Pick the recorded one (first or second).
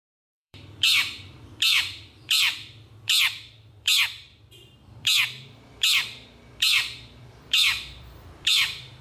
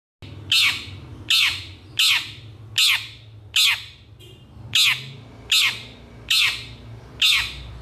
second